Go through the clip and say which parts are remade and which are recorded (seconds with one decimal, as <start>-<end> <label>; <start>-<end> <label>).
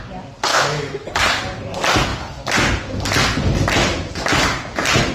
0.0-0.5 recorded; 0.5-1.1 remade; 1.1-5.1 recorded